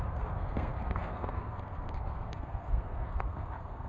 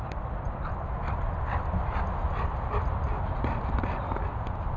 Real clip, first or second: second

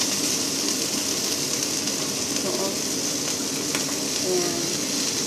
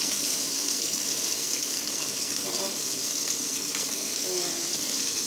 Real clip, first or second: first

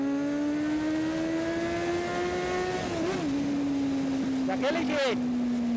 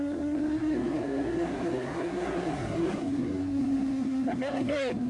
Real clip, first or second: first